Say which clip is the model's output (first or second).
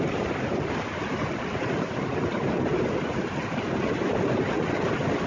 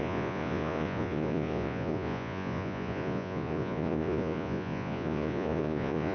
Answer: second